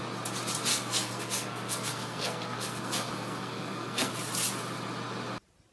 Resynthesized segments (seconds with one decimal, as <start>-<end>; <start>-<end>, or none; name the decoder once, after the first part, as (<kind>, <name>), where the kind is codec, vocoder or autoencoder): 0.7-4.1 (codec, SNAC)